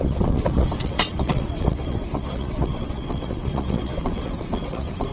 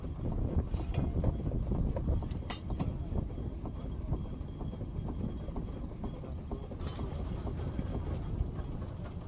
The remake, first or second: first